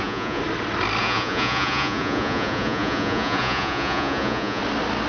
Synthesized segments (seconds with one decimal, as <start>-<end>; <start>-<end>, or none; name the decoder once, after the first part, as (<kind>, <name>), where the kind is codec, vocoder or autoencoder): 0.0-0.4 (vocoder, Vocos); 1.0-4.6